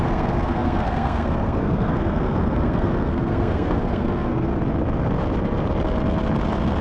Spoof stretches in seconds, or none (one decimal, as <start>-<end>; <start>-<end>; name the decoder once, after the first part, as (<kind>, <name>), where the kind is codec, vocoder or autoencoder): 0.0-4.5 (codec, SNAC)

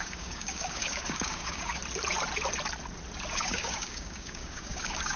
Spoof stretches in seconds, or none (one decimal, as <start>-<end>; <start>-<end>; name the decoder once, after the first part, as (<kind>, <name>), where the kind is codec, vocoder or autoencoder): 0.0-1.8 (codec, DAC); 3.3-5.2

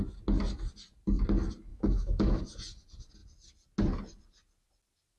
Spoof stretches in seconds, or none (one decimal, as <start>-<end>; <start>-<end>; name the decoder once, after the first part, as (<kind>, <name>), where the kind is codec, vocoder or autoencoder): 1.7-2.4 (autoencoder, DAC-VAE)

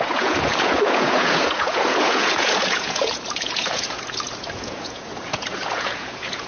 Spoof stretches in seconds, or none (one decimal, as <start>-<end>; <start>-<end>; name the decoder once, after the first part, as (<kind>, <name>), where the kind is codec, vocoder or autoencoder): 0.0-6.5 (vocoder, Vocos)

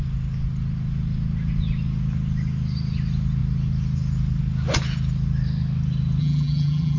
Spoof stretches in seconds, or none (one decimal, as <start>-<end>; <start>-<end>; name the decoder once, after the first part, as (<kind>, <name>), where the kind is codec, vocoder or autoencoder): 6.2-7.0 (vocoder, BigVGAN v2)